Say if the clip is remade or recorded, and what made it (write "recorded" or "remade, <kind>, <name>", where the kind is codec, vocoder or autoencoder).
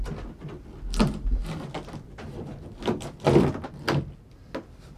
recorded